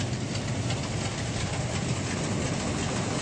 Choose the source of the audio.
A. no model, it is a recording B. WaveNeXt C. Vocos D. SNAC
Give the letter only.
A